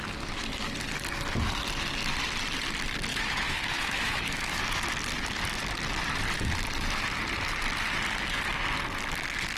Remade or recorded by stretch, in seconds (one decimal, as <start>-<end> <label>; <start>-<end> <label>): 0.0-3.1 recorded; 3.1-4.6 remade; 4.6-9.6 recorded